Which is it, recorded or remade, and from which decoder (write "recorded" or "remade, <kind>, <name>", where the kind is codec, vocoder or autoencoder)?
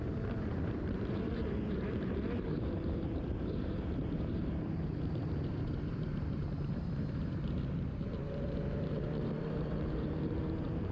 remade, vocoder, BigVGAN v2